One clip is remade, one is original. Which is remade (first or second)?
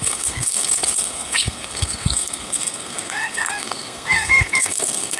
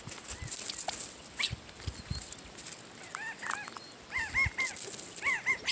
first